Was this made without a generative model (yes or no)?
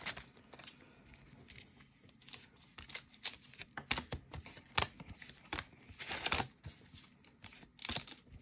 yes